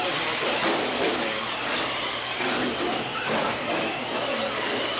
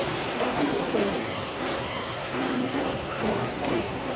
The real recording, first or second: first